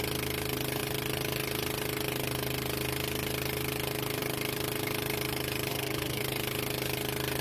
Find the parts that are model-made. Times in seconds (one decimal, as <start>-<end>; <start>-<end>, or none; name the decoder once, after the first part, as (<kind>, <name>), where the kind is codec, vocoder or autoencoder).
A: 5.7-6.2 (codec, SNAC)